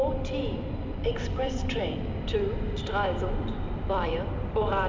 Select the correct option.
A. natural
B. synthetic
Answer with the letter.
B